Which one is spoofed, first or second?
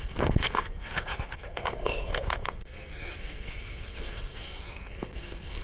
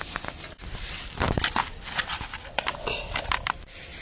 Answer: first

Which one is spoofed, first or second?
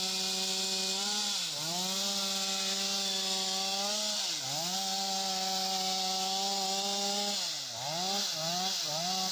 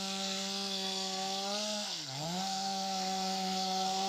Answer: second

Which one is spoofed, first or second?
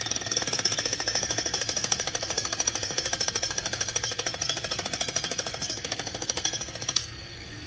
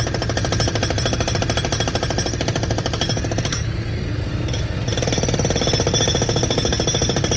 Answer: first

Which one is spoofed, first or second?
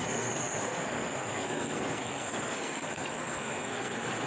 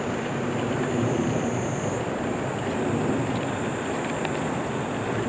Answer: first